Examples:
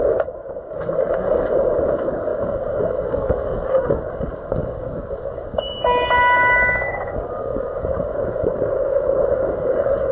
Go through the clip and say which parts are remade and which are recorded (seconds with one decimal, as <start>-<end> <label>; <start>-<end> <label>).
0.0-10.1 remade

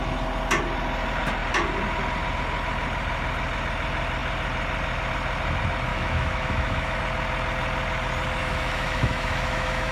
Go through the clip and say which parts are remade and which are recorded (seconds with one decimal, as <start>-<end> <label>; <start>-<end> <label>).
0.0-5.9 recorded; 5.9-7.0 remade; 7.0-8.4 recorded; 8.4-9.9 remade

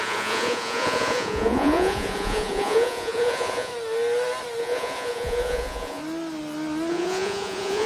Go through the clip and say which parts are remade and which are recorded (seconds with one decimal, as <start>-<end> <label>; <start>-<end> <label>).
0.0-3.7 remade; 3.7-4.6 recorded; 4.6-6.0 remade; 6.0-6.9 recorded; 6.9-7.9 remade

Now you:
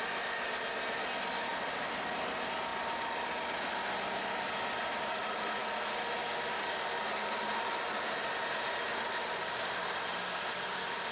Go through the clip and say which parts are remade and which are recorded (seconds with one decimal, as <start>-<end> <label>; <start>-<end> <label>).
0.0-11.1 recorded